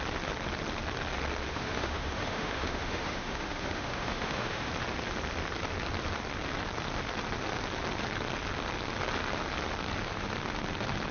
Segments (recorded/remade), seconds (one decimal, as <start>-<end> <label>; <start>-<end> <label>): 0.0-1.5 recorded; 1.5-4.7 remade; 4.7-11.1 recorded